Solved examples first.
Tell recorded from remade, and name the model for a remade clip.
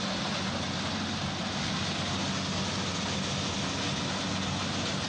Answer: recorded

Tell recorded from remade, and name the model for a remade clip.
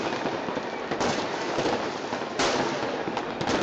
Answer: recorded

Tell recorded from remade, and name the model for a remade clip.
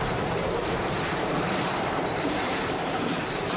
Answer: remade, vocoder, BigVGAN v2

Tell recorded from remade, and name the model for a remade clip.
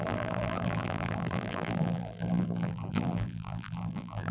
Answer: remade, vocoder, BigVGAN v2